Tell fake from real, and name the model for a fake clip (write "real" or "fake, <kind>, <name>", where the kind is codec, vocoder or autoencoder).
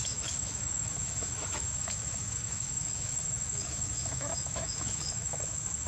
fake, autoencoder, DAC-VAE